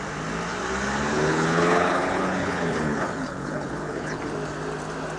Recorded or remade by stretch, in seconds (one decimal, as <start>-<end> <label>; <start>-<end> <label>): 0.0-1.1 recorded; 1.1-4.2 remade; 4.2-5.2 recorded